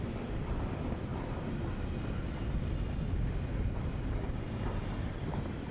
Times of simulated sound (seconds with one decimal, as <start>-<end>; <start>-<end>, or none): none